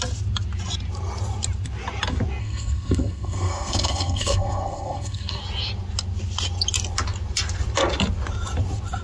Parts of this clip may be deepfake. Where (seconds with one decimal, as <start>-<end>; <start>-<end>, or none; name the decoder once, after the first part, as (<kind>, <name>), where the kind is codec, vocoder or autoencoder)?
2.4-5.4 (codec, SNAC)